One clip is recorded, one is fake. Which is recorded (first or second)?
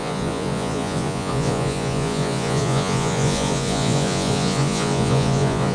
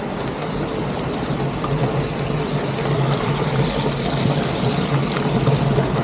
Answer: second